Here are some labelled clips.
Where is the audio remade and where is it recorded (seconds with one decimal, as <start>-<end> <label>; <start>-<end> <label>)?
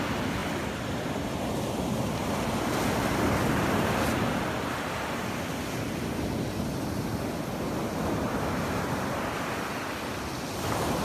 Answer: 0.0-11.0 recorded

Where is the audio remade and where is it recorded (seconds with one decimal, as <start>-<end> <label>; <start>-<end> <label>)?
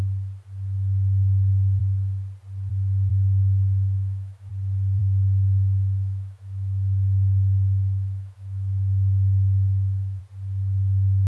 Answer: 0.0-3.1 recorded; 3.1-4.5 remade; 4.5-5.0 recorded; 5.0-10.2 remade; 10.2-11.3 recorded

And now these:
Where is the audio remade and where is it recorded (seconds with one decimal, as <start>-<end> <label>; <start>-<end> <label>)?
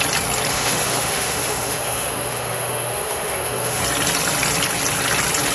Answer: 0.0-0.5 recorded; 0.5-3.8 remade; 3.8-5.5 recorded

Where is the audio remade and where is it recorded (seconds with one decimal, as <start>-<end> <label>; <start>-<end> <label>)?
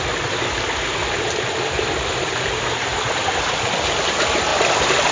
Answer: 0.0-5.1 recorded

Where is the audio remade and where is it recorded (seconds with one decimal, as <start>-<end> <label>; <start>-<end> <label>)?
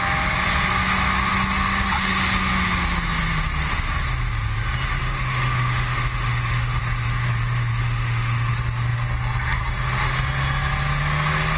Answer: 0.0-5.0 recorded; 5.0-6.8 remade; 6.8-7.8 recorded; 7.8-8.5 remade; 8.5-11.6 recorded